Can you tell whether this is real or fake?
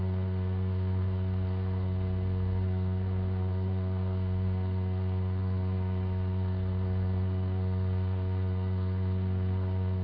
fake